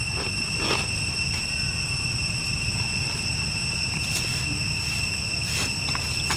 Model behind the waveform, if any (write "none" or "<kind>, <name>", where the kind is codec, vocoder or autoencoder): none